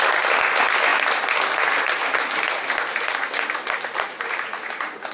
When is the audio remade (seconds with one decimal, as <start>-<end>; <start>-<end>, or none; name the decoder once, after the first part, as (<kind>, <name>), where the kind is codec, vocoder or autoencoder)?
none